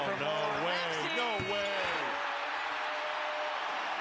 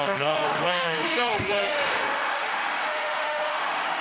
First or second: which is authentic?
first